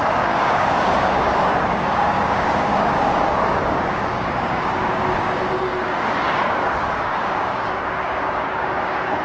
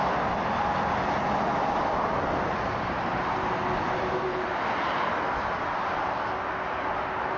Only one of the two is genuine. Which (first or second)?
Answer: second